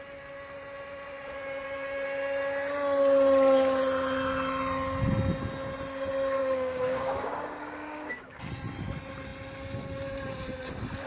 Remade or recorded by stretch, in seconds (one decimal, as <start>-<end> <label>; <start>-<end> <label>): 0.0-6.4 recorded; 6.4-8.5 remade; 8.5-11.1 recorded

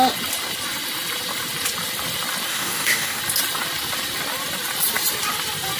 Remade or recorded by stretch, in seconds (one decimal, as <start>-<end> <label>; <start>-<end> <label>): 0.0-2.5 recorded; 2.5-3.2 remade; 3.2-5.8 recorded

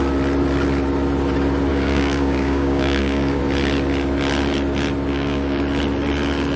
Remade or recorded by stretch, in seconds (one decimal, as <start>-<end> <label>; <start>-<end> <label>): 0.0-1.7 recorded; 1.7-3.4 remade; 3.4-5.1 recorded; 5.1-5.6 remade; 5.6-6.6 recorded

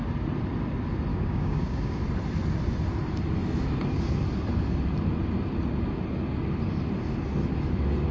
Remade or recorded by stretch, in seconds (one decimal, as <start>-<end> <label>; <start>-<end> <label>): 0.0-1.1 recorded; 1.1-2.0 remade; 2.0-8.1 recorded